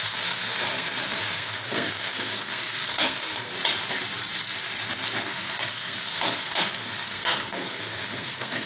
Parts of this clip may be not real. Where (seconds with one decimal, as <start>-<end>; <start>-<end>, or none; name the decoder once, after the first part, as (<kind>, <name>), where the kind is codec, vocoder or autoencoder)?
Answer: 0.0-3.5 (codec, SNAC); 5.2-8.7